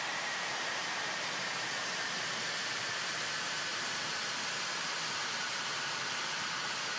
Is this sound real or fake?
fake